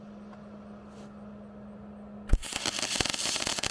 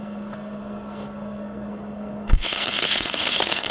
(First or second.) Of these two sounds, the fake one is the second